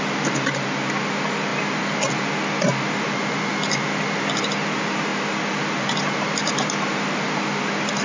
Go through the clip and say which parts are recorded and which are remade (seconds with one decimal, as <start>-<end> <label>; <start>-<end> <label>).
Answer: 0.0-8.0 recorded